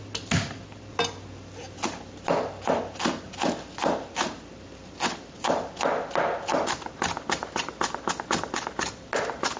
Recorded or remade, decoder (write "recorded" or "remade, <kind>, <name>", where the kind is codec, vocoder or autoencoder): recorded